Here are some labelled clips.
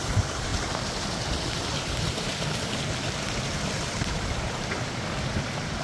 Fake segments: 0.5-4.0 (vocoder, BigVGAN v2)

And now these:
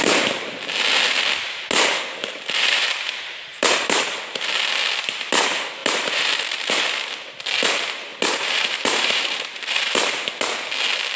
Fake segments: 2.2-2.9 (vocoder, BigVGAN v2); 3.5-4.0; 5.8-6.7; 8.1-10.3

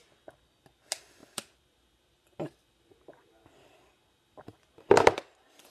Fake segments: 1.2-2.9 (vocoder, BigVGAN v2)

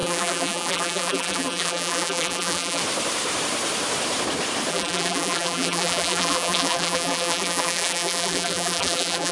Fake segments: 0.0-2.8 (vocoder, BigVGAN v2); 4.7-9.3